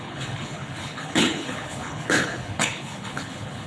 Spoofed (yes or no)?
yes